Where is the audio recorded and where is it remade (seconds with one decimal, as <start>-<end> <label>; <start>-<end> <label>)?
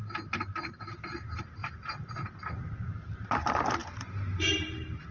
0.0-3.8 recorded; 3.8-5.1 remade